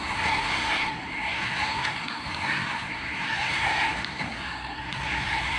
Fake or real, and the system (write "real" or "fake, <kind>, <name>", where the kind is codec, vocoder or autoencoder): fake, codec, SNAC